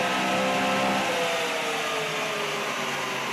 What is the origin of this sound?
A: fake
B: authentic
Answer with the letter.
B